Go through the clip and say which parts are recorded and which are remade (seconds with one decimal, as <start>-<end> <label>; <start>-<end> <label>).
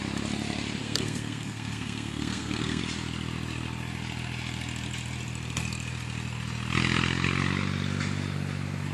0.0-0.8 recorded; 0.8-2.8 remade; 2.8-8.9 recorded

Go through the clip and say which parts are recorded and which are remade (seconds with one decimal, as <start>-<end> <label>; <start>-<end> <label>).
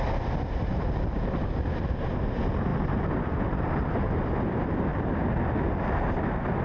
0.0-6.6 recorded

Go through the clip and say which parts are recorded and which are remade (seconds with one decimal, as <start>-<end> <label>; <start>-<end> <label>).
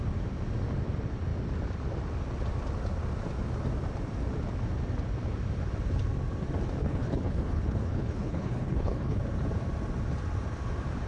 0.0-6.8 recorded; 6.8-9.2 remade; 9.2-11.1 recorded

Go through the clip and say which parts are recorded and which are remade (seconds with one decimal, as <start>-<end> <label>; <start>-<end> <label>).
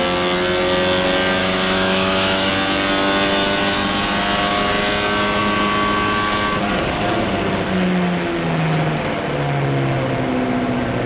0.0-1.4 recorded; 1.4-2.5 remade; 2.5-11.1 recorded